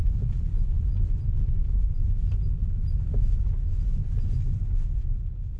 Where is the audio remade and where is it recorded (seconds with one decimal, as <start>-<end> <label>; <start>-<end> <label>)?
0.0-5.6 recorded

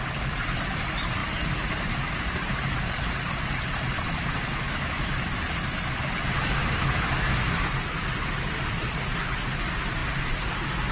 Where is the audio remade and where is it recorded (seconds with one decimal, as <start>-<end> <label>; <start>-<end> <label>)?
0.0-4.5 recorded; 4.5-5.1 remade; 5.1-6.6 recorded; 6.6-7.9 remade; 7.9-10.9 recorded